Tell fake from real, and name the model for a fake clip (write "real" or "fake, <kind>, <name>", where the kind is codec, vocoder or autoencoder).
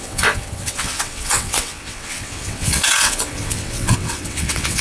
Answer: fake, vocoder, WaveNeXt